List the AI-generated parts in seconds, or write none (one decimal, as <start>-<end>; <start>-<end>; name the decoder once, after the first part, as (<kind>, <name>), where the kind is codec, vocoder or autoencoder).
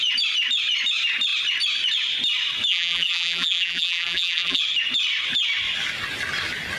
2.7-4.6 (vocoder, BigVGAN v2)